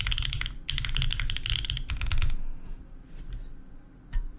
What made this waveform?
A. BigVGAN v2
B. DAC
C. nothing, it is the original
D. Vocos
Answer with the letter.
C